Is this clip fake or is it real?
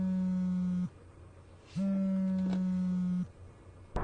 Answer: real